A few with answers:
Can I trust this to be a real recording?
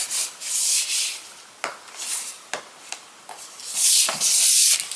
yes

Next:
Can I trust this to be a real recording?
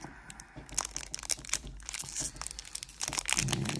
yes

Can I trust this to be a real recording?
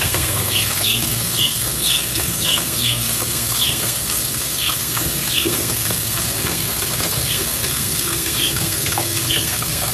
no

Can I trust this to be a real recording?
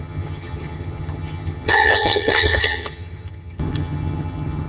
no